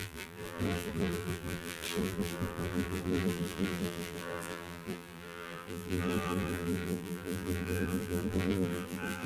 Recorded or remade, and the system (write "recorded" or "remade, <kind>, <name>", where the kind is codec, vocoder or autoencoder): remade, vocoder, BigVGAN v2